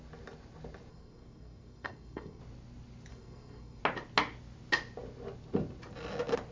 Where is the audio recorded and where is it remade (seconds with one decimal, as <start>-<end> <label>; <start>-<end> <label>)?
0.0-0.9 recorded; 0.9-2.4 remade; 2.4-3.1 recorded; 3.1-3.8 remade; 3.8-6.5 recorded